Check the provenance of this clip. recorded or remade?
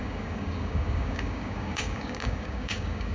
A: remade